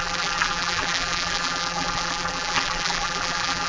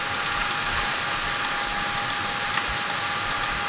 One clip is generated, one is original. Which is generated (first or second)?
first